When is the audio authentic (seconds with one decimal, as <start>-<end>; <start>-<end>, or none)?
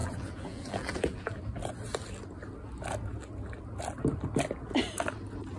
1.4-5.6